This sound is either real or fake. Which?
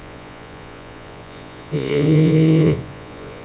fake